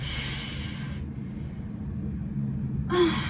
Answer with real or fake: real